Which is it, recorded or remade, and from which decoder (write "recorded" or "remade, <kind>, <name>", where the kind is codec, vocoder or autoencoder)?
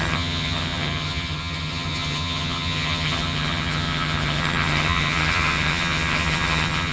remade, vocoder, HiFi-GAN